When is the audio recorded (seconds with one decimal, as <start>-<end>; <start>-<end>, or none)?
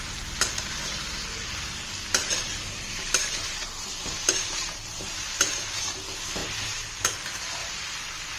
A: 0.0-2.2; 5.4-6.4; 7.0-7.6